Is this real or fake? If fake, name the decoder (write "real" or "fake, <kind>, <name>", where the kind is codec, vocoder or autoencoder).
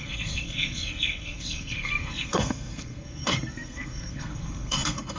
fake, codec, SNAC